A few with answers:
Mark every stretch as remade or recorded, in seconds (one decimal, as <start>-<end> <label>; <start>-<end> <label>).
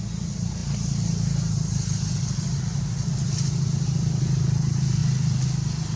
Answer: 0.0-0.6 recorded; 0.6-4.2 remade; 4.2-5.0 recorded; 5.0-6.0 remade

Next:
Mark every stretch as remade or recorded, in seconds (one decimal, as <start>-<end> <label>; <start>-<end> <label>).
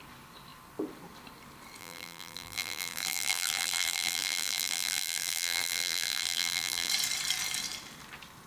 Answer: 0.0-1.8 recorded; 1.8-6.9 remade; 6.9-8.5 recorded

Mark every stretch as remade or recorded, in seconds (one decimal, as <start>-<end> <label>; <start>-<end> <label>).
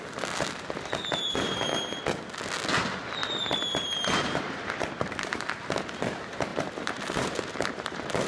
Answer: 0.0-3.2 recorded; 3.2-5.4 remade; 5.4-6.5 recorded; 6.5-8.3 remade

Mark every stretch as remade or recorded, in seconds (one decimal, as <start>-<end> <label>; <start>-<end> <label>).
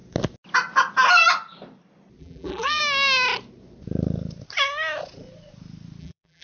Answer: 0.0-2.2 recorded; 2.2-2.8 remade; 2.8-6.0 recorded; 6.0-6.4 remade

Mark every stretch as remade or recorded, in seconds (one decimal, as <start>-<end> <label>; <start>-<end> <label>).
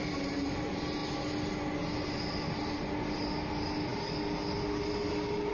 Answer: 0.0-5.5 recorded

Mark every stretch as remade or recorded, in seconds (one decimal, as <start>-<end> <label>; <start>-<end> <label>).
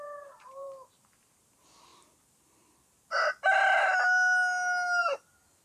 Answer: 0.0-1.9 remade; 1.9-5.0 recorded; 5.0-5.6 remade